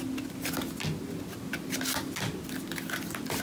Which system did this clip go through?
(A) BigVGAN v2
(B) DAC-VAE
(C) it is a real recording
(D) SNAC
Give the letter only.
C